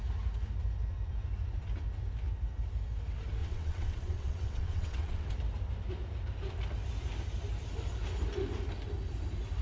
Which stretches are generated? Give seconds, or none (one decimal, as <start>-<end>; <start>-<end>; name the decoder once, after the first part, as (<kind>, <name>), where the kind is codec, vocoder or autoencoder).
3.4-5.3 (vocoder, WaveNeXt)